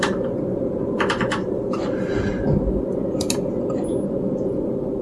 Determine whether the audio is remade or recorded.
recorded